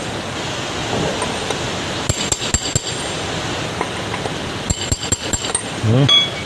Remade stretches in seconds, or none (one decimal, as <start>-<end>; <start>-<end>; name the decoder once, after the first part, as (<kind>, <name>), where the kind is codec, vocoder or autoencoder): none